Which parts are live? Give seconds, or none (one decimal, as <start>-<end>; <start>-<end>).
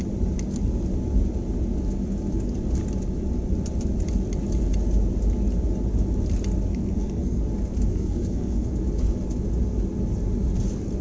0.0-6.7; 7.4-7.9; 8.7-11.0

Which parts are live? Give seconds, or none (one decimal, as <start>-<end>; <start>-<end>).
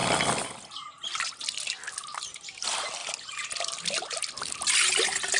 0.0-5.4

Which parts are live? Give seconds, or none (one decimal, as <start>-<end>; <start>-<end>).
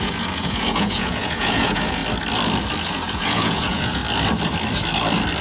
2.0-2.9; 4.0-5.4